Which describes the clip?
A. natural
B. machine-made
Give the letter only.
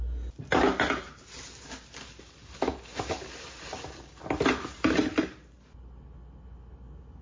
A